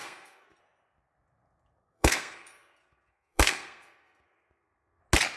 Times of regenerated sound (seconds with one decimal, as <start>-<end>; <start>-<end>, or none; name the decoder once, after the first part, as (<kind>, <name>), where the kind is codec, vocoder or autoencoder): 0.0-0.6 (codec, SNAC); 1.8-5.0